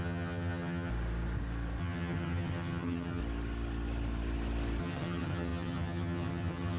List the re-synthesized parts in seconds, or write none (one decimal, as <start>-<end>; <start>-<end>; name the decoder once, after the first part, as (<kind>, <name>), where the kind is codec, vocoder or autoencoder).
0.0-0.9 (vocoder, HiFi-GAN); 1.8-3.2; 4.8-6.8